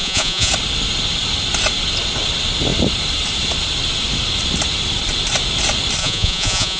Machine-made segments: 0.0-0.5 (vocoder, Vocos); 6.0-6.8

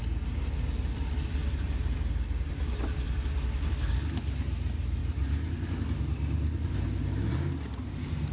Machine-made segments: none